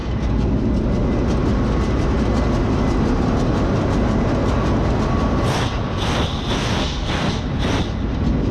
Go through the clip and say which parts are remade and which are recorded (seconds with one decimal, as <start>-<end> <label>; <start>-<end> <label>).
0.0-6.8 recorded; 6.8-7.4 remade; 7.4-8.5 recorded

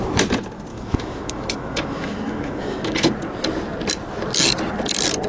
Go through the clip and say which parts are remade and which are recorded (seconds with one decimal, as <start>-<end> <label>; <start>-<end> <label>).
0.0-0.7 recorded; 0.7-3.1 remade; 3.1-5.3 recorded

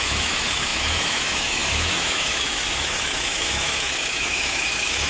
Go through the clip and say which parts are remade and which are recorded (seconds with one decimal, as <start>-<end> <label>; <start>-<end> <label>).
0.0-5.1 remade

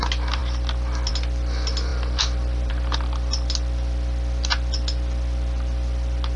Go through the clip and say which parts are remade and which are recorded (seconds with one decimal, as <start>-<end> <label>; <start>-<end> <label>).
0.0-6.4 recorded

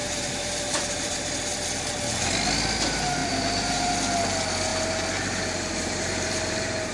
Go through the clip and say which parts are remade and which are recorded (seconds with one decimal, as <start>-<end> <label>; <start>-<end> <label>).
0.0-1.4 remade; 1.4-3.2 recorded; 3.2-3.9 remade; 3.9-4.7 recorded; 4.7-6.9 remade